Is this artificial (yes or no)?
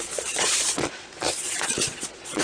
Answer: yes